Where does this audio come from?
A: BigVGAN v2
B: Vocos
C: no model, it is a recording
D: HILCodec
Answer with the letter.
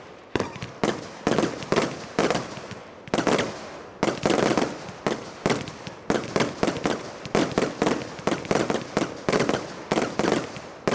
C